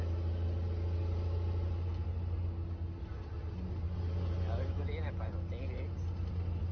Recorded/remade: recorded